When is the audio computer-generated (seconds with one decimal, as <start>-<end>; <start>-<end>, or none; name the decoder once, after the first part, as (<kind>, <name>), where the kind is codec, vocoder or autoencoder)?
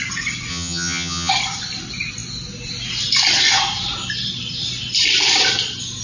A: 0.5-1.3 (vocoder, HiFi-GAN)